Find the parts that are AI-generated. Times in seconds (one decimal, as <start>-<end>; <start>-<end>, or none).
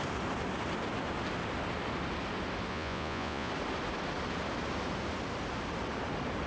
2.7-3.5